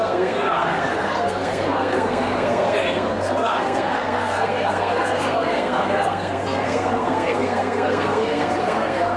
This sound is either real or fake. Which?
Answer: fake